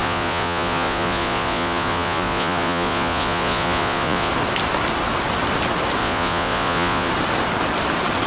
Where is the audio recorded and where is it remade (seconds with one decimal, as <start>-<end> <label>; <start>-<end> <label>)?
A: 0.0-4.3 remade; 4.3-6.0 recorded; 6.0-7.1 remade; 7.1-8.3 recorded